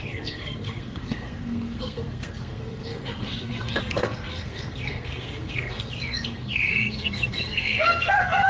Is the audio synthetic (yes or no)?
yes